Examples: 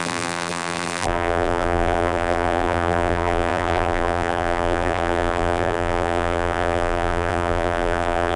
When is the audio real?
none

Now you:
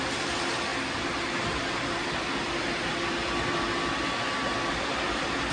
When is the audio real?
0.7-1.7

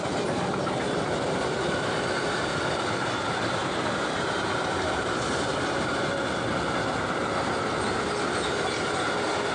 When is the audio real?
0.0-3.6; 6.2-9.5

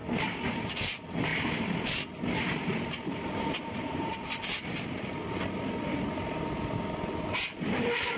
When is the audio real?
0.0-0.5

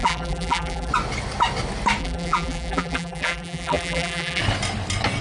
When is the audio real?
0.9-2.0; 4.4-5.2